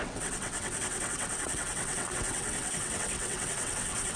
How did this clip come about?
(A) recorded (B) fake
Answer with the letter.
B